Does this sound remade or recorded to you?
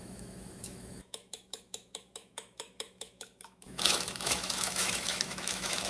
remade